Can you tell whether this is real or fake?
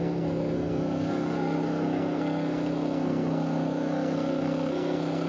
fake